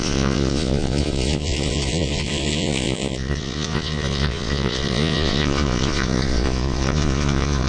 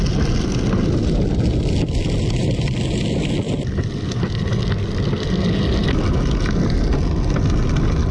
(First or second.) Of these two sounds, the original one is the second